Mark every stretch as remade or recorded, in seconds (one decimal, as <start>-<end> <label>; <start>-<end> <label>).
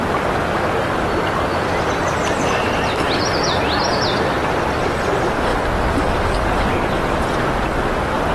0.0-1.5 recorded; 1.5-2.1 remade; 2.1-8.3 recorded